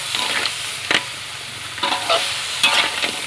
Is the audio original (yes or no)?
yes